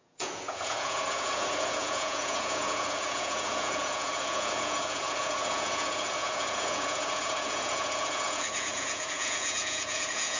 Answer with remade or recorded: remade